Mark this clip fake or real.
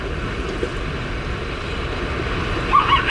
real